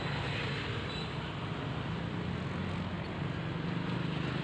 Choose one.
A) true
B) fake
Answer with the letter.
A